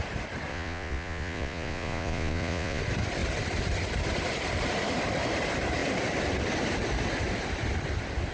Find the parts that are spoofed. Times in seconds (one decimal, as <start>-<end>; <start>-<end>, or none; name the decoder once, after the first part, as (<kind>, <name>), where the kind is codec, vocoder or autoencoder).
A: 0.5-2.8 (vocoder, Vocos)